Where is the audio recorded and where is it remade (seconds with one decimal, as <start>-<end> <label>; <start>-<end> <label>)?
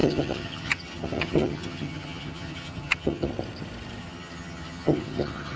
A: 0.0-3.3 remade; 3.3-4.0 recorded; 4.0-5.6 remade